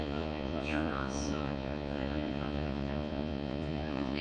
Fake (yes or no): yes